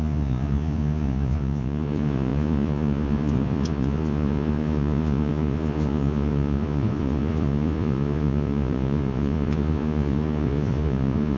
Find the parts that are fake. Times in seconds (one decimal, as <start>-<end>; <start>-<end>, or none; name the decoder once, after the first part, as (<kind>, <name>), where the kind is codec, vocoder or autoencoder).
0.0-11.4 (vocoder, Vocos)